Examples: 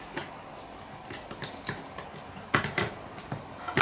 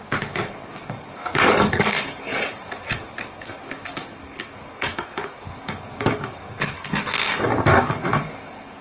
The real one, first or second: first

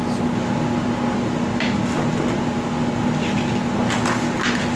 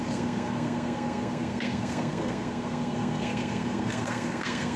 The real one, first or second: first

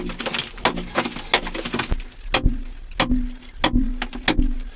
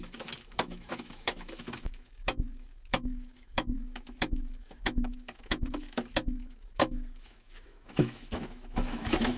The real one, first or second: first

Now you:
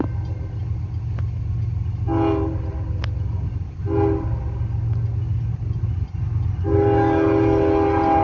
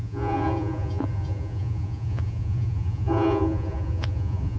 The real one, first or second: first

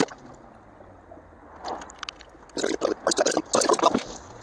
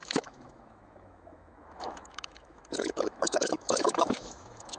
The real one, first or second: first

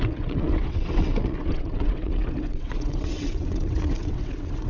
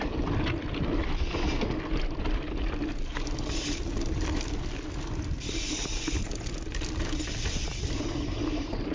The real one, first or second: second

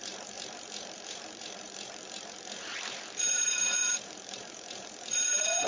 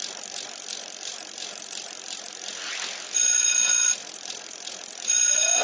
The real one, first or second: second